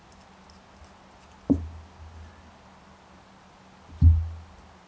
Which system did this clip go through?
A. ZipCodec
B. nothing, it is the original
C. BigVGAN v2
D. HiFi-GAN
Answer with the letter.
B